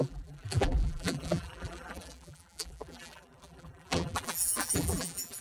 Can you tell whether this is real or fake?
fake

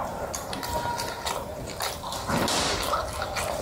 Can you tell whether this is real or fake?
fake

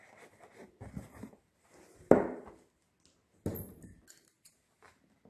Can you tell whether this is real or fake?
real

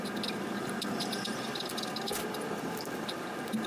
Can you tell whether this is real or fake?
real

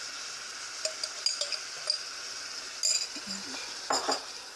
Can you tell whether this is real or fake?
real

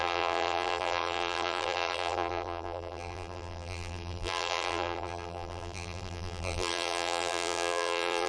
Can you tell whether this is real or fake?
fake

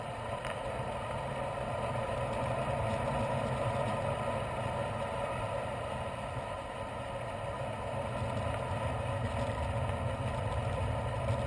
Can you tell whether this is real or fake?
real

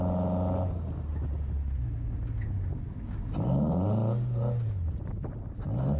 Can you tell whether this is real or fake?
real